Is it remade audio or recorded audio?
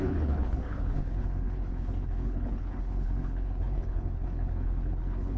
remade